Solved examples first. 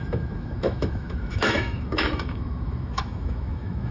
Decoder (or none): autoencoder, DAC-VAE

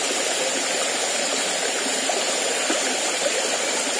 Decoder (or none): none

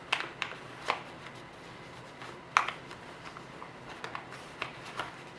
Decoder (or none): none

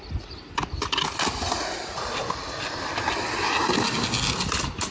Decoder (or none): none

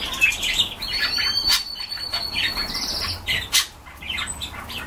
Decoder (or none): none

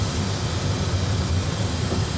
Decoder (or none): none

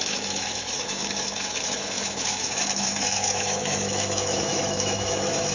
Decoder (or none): autoencoder, DAC-VAE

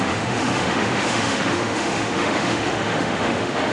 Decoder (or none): autoencoder, DAC-VAE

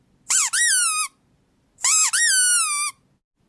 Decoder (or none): none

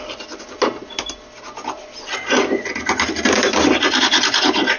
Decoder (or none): none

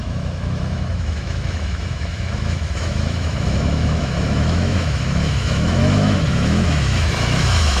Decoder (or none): autoencoder, DAC-VAE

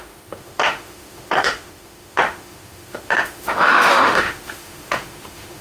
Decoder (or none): autoencoder, DAC-VAE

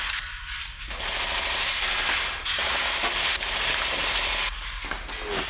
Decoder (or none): none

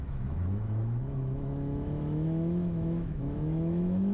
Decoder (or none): autoencoder, DAC-VAE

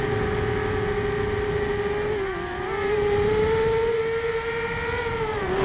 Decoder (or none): none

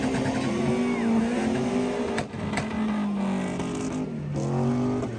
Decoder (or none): none